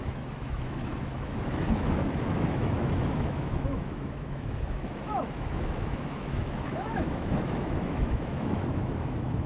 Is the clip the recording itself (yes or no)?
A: no